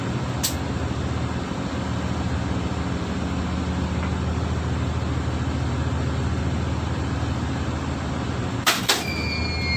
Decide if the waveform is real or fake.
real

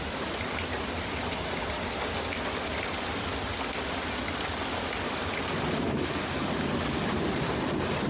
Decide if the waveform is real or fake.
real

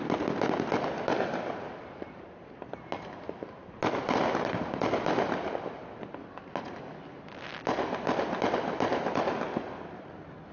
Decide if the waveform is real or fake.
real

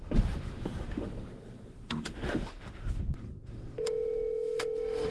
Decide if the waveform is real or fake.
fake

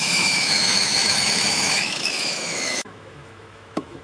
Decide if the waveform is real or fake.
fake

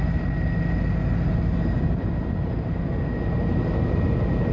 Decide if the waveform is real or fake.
real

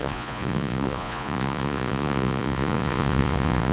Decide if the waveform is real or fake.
fake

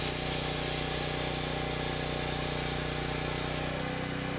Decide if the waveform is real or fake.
real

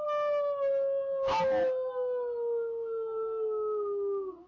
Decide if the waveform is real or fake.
real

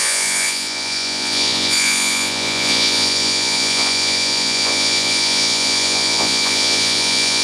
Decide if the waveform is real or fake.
fake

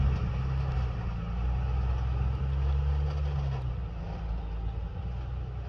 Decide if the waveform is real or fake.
real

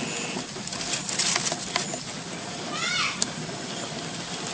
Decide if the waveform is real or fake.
real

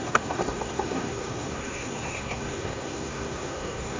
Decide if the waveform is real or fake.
fake